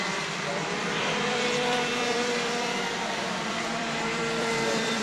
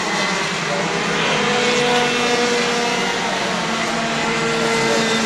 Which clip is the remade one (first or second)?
first